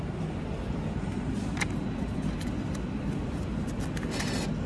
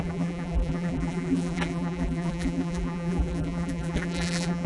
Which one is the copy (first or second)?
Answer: second